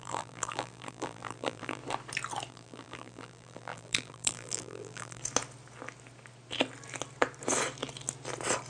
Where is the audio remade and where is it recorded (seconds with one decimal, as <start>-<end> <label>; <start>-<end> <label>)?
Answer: 0.0-1.8 remade; 1.8-2.5 recorded; 2.5-5.2 remade; 5.2-8.7 recorded